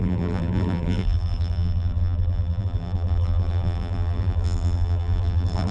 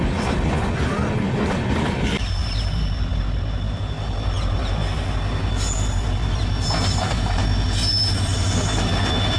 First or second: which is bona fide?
second